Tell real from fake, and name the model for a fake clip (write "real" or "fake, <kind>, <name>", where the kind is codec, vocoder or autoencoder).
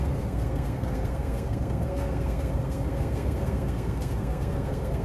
fake, codec, SNAC